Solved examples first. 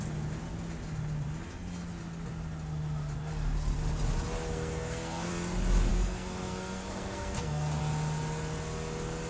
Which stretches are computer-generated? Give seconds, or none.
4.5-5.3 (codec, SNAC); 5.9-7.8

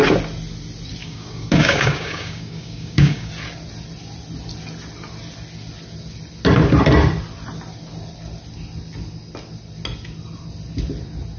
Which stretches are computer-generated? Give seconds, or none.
1.0-3.3 (codec, DAC)

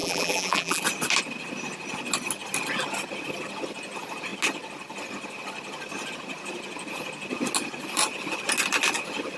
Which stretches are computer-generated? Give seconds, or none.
0.0-0.8 (vocoder, BigVGAN v2)

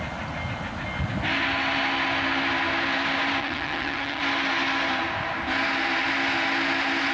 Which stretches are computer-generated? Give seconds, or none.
3.4-4.2 (vocoder, HiFi-GAN)

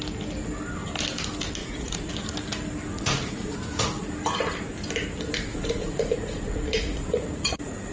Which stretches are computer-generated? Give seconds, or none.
1.6-2.1 (vocoder, Vocos); 2.9-4.0; 5.5-7.9

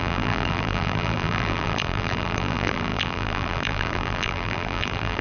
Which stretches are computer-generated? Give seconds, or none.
0.0-5.2 (vocoder, BigVGAN v2)

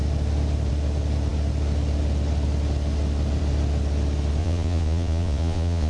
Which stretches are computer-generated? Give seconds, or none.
4.4-5.9 (vocoder, Vocos)

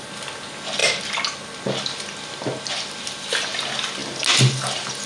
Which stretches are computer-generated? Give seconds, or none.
none